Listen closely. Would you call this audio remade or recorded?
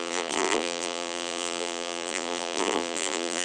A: remade